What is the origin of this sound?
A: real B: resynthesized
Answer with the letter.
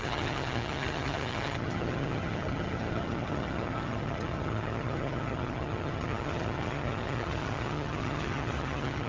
B